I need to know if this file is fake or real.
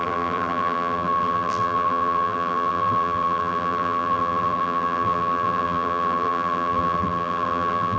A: fake